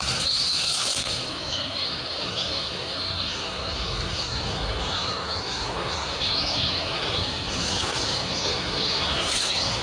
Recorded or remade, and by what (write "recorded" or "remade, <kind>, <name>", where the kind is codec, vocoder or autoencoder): remade, codec, SNAC